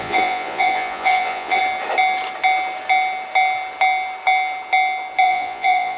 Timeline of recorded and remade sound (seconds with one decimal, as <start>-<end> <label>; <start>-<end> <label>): 0.0-1.6 remade; 1.6-5.2 recorded; 5.2-6.0 remade